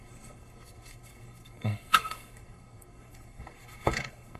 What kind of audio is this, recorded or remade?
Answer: remade